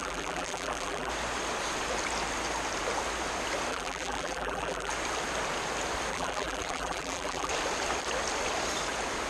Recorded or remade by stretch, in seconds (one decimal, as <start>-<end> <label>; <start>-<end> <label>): 0.0-1.1 remade; 1.1-3.7 recorded; 3.7-4.9 remade; 4.9-6.1 recorded; 6.1-7.5 remade; 7.5-9.3 recorded